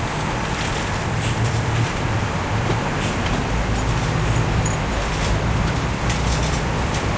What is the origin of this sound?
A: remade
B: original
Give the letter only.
A